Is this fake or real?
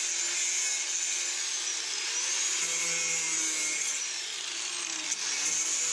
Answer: real